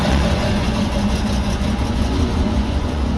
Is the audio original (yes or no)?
no